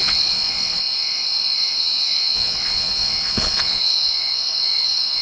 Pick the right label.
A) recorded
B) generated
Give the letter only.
B